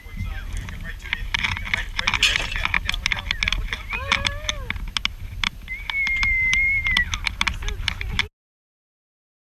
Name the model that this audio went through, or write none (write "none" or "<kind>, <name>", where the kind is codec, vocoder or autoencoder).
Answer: none